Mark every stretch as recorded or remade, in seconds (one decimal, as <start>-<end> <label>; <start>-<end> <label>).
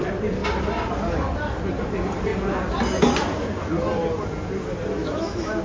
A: 0.0-5.0 recorded; 5.0-5.6 remade